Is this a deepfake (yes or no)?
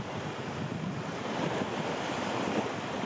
no